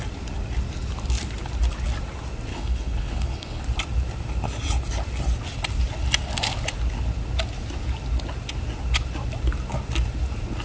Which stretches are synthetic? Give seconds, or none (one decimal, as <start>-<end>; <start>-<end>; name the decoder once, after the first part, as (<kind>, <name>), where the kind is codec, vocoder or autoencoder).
2.5-3.6 (codec, HILCodec)